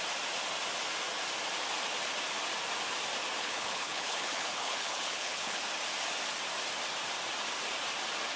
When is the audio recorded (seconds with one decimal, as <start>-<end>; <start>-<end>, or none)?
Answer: 0.0-3.4; 5.6-8.4